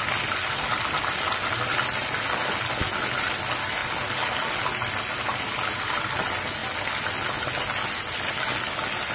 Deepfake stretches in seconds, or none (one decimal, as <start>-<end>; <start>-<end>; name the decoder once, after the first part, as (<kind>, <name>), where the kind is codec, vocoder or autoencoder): none